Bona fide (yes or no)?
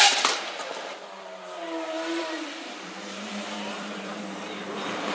no